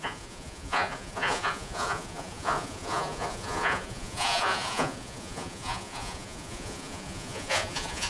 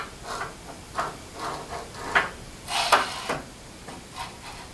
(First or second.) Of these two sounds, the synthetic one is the first